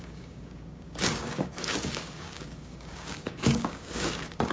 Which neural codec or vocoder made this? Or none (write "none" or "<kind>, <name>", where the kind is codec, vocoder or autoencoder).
codec, DAC